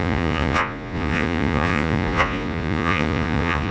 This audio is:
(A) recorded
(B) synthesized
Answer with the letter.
B